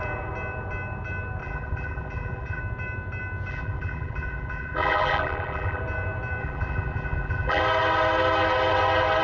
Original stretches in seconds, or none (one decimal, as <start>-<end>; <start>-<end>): 0.0-1.4; 2.6-3.5; 5.8-6.4; 7.6-9.2